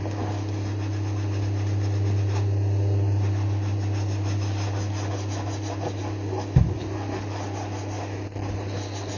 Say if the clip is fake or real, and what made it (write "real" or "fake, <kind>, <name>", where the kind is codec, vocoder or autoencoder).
real